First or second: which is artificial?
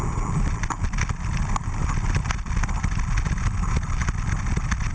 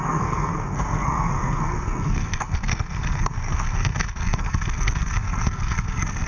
second